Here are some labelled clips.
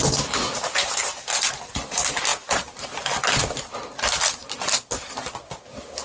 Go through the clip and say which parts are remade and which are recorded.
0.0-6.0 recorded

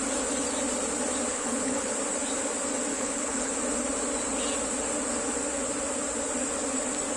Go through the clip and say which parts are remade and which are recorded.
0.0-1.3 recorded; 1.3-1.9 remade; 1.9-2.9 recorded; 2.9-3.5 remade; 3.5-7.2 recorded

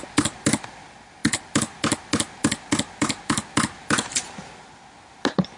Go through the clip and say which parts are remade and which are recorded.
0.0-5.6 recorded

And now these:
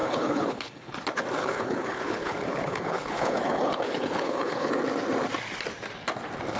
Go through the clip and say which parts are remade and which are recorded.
0.0-0.9 remade; 0.9-1.4 recorded; 1.4-4.7 remade; 4.7-6.6 recorded

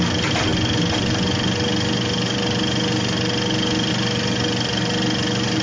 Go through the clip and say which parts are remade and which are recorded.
0.0-5.6 recorded

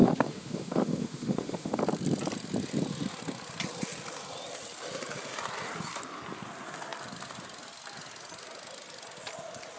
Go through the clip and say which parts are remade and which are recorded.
0.0-1.8 remade; 1.8-9.8 recorded

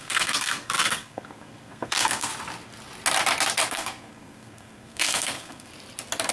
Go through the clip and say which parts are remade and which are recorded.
0.0-2.3 remade; 2.3-3.7 recorded; 3.7-5.7 remade; 5.7-6.3 recorded